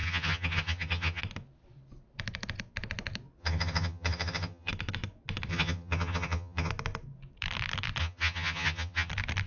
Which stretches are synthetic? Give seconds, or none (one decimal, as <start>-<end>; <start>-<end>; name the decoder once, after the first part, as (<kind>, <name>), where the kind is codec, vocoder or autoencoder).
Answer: 0.0-1.2 (vocoder, HiFi-GAN); 3.4-4.7; 5.5-6.7; 8.0-9.1